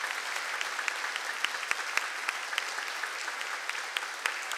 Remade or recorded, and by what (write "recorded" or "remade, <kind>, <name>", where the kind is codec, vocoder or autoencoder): recorded